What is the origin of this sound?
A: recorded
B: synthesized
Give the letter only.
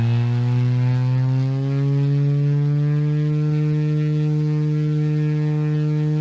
A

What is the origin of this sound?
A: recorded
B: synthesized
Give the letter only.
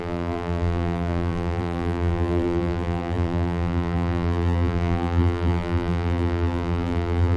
B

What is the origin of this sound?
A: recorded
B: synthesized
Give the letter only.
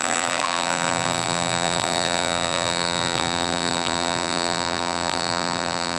B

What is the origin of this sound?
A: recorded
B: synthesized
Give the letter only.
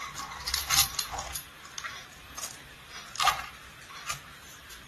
B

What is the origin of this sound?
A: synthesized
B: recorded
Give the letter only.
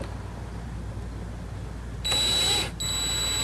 B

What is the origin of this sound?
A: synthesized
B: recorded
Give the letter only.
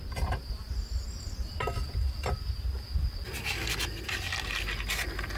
B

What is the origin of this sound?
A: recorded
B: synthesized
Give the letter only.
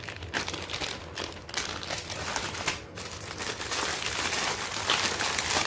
A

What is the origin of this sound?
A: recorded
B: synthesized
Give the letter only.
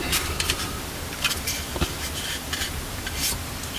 B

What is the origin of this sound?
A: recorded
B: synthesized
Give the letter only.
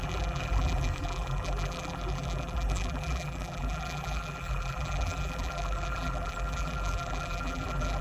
B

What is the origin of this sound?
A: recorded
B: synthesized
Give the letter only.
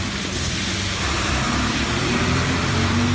B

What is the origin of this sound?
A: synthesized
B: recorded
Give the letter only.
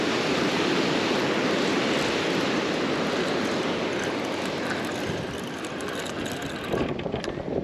B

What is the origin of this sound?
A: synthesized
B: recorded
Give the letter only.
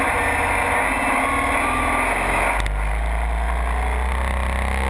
B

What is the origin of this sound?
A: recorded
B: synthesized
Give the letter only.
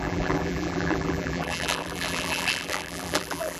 B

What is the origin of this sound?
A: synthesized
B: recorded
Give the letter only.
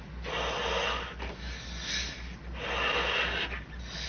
B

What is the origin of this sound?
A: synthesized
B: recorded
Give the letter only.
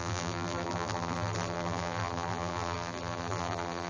A